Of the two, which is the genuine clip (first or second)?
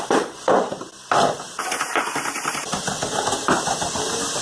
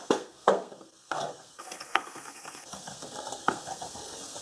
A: first